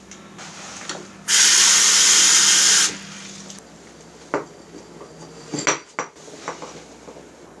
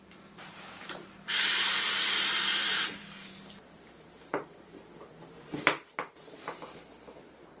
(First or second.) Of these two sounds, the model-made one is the second